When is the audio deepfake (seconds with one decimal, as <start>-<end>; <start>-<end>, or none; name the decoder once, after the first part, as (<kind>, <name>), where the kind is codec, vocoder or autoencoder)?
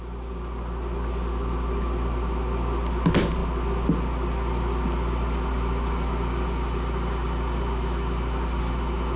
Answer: none